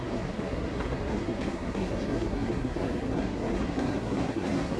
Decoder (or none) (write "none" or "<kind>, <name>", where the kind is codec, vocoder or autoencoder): codec, SNAC